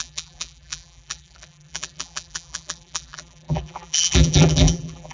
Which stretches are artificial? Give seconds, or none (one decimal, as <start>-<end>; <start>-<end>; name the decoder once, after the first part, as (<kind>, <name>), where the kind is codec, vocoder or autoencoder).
0.0-5.1 (vocoder, BigVGAN v2)